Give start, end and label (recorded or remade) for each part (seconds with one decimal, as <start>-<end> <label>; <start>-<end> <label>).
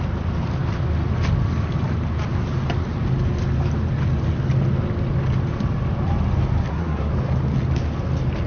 0.0-6.6 recorded; 6.6-7.1 remade; 7.1-8.5 recorded